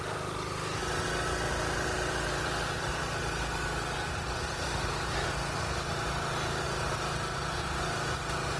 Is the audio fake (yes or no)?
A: no